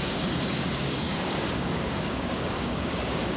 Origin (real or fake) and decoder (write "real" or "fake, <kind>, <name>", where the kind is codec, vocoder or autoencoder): fake, codec, DAC